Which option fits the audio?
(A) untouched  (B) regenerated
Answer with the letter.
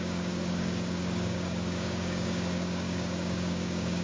B